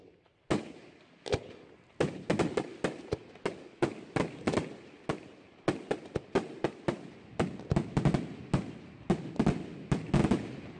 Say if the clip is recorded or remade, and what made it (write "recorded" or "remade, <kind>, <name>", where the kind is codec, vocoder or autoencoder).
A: recorded